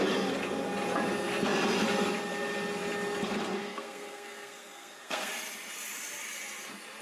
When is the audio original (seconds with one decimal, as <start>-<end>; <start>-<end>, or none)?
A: 0.0-3.6; 5.3-7.0